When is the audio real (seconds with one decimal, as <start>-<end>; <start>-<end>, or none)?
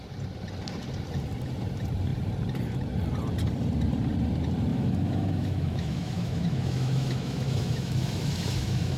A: 0.0-4.7